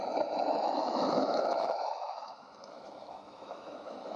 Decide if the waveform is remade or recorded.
remade